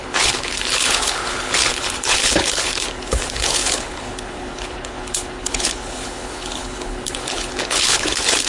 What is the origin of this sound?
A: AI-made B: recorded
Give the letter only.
A